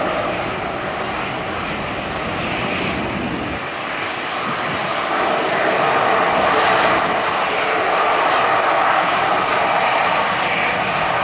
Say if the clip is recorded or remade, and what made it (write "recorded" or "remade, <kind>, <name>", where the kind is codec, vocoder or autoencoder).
recorded